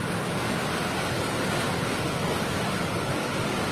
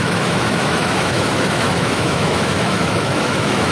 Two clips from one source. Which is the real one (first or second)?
first